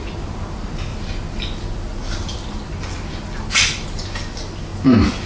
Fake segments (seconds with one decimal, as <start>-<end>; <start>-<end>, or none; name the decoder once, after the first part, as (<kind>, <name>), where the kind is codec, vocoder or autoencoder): 0.9-2.9 (vocoder, BigVGAN v2)